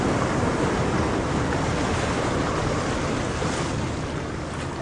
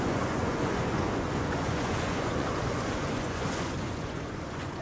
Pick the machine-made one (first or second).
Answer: second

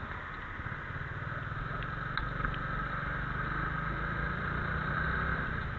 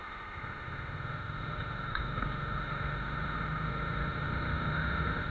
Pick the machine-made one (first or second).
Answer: second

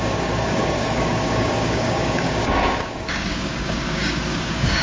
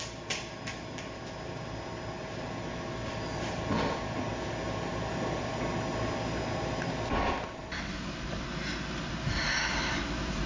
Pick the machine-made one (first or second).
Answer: first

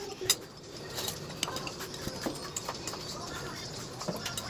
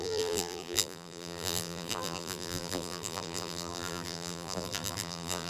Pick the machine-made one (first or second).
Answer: second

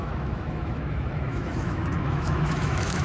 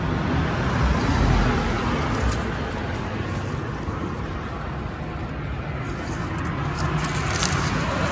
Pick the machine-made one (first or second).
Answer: first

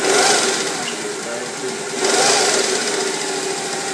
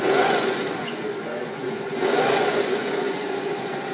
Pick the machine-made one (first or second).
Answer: second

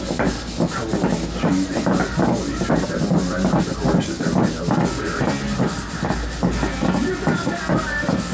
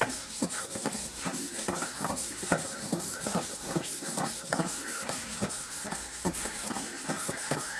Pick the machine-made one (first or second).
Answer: second